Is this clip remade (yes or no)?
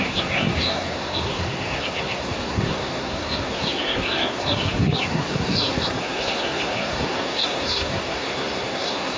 yes